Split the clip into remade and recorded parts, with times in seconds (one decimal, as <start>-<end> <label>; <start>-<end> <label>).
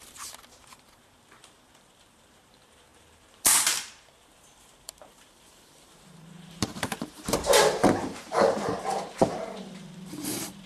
0.0-10.7 remade